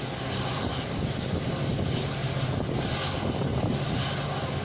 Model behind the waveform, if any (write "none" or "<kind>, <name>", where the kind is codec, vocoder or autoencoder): none